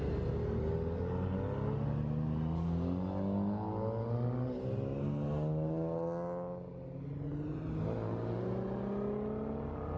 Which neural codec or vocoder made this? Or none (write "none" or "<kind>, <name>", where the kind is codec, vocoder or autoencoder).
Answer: none